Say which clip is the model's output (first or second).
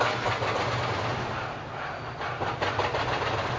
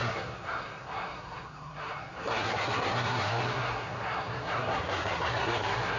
second